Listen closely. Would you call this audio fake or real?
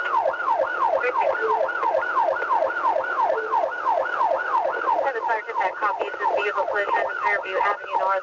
real